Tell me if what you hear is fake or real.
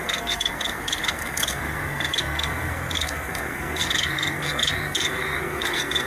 fake